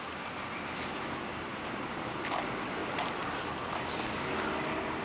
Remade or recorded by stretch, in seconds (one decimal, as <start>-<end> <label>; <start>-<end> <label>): 0.0-5.0 recorded